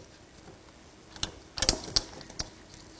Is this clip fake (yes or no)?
no